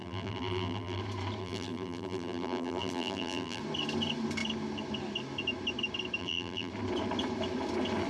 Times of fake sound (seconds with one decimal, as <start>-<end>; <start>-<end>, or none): 0.0-1.0; 1.4-3.6; 6.2-6.7